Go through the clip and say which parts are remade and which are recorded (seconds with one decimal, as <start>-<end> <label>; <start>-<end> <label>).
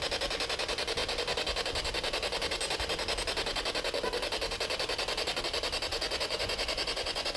0.0-5.9 recorded; 5.9-7.4 remade